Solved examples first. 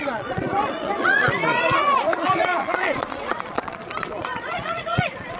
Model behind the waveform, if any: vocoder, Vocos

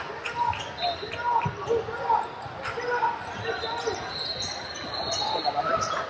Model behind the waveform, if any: none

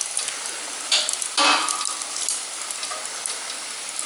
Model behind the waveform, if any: none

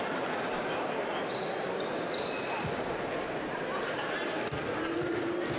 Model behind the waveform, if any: none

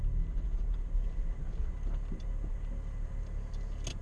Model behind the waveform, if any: none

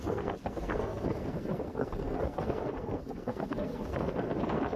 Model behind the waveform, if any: codec, SNAC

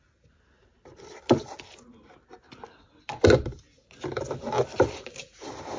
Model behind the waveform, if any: none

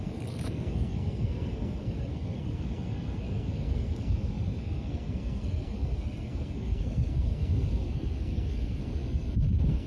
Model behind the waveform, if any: codec, SNAC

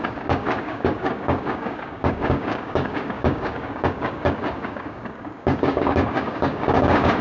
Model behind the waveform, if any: codec, DAC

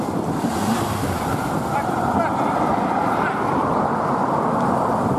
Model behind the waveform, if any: vocoder, BigVGAN v2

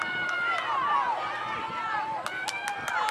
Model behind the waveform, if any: none